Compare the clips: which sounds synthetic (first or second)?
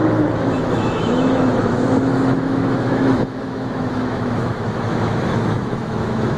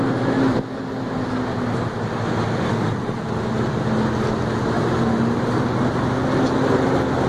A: first